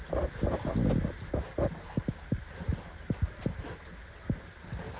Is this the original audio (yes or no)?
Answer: yes